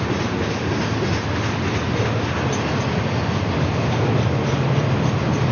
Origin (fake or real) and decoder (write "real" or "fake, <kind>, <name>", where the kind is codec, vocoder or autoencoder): real